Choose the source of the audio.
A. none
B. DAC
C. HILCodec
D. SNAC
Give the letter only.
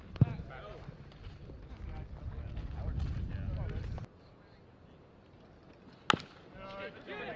A